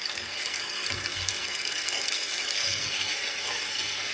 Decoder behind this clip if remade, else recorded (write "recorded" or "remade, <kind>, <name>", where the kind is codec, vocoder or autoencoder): remade, codec, SNAC